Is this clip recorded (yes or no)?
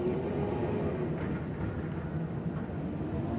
yes